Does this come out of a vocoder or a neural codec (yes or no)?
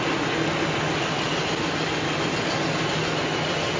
no